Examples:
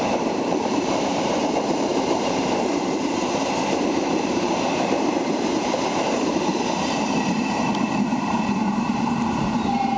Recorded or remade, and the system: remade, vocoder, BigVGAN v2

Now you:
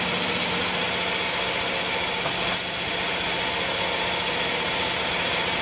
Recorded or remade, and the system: recorded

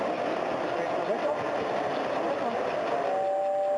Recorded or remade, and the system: recorded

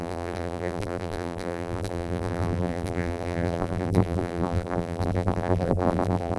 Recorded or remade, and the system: remade, vocoder, BigVGAN v2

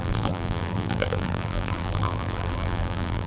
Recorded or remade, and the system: remade, vocoder, BigVGAN v2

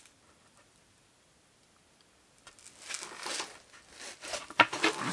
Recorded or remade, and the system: recorded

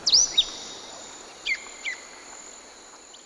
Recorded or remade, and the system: remade, vocoder, BigVGAN v2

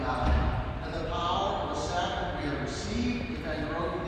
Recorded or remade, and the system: recorded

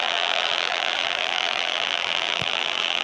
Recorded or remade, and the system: remade, vocoder, BigVGAN v2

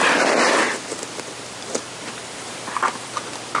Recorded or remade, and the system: remade, vocoder, BigVGAN v2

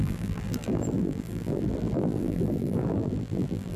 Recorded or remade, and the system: remade, vocoder, BigVGAN v2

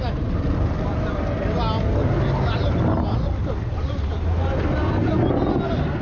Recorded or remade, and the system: recorded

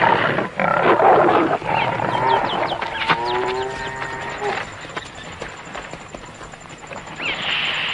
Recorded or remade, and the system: recorded